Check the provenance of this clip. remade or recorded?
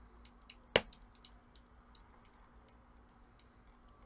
recorded